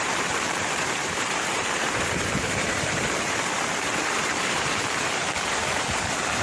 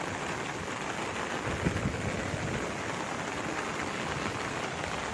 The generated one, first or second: first